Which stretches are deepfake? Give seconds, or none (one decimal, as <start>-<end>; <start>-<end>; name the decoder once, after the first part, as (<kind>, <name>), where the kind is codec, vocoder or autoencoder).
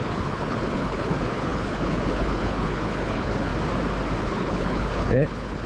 0.0-3.5 (codec, HILCodec); 4.2-5.7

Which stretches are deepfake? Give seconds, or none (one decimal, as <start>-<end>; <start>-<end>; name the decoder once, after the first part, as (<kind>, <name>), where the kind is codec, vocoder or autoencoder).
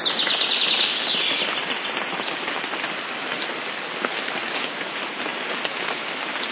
none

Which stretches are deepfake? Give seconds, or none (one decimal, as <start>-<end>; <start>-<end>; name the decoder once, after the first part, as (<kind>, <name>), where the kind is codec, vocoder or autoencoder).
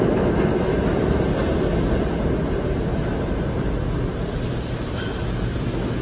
none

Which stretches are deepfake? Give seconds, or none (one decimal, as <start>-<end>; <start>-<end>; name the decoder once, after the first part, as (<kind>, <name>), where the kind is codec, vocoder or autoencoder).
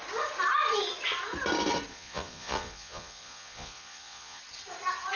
1.9-4.4 (vocoder, Vocos)